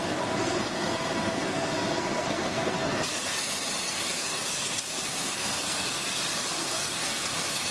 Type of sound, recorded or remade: remade